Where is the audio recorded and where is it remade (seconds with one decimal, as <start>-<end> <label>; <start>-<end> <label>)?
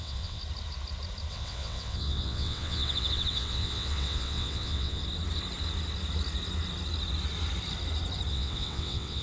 0.0-0.4 remade; 0.4-1.3 recorded; 1.3-5.0 remade; 5.0-8.3 recorded; 8.3-9.2 remade